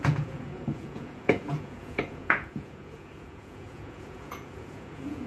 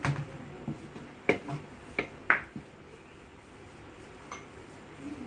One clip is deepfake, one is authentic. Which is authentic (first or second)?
second